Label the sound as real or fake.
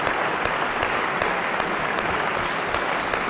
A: real